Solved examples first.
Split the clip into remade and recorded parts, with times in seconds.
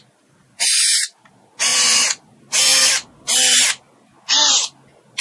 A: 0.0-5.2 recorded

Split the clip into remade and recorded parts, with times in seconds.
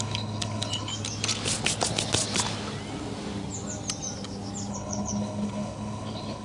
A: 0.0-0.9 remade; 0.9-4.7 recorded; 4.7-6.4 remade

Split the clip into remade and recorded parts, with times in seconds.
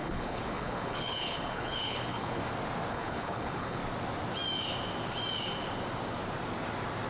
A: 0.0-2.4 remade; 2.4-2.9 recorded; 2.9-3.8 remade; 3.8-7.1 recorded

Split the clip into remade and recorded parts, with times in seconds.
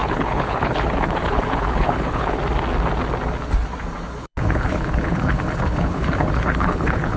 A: 0.0-2.4 remade; 2.4-4.2 recorded; 4.2-7.2 remade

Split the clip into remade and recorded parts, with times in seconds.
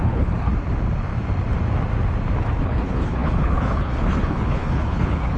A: 0.0-0.5 remade; 0.5-2.6 recorded; 2.6-5.4 remade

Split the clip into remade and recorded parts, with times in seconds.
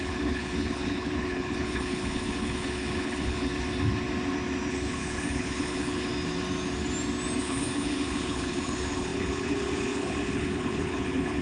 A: 0.0-3.5 remade; 3.5-4.7 recorded; 4.7-6.1 remade; 6.1-7.4 recorded; 7.4-11.4 remade